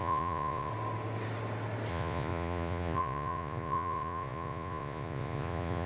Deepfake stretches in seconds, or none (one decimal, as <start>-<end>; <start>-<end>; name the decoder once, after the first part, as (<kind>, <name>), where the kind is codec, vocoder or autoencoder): 0.0-0.7 (vocoder, Vocos); 1.9-5.9